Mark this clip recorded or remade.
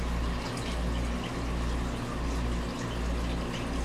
recorded